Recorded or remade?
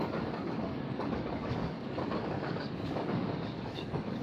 remade